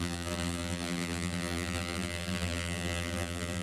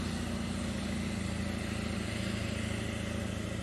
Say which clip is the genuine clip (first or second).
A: second